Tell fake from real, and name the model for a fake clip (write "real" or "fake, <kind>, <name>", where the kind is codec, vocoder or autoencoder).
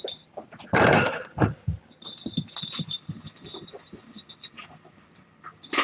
real